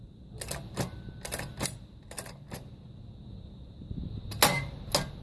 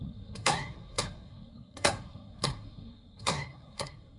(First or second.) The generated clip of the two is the second